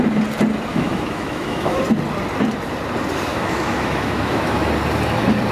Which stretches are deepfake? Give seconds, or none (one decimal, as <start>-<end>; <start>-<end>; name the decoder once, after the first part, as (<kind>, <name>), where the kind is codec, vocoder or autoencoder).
0.7-1.8 (autoencoder, DAC-VAE); 3.3-4.7